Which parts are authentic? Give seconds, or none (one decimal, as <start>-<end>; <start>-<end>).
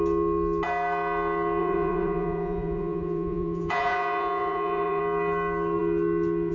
0.0-1.6; 5.0-6.5